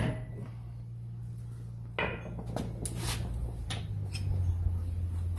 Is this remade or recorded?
recorded